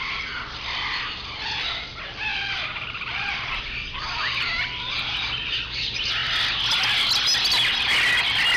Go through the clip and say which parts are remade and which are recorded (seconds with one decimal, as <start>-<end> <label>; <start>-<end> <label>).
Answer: 0.0-2.3 recorded; 2.3-3.6 remade; 3.6-8.6 recorded